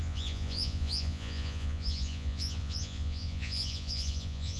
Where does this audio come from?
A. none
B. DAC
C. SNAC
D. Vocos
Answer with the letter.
D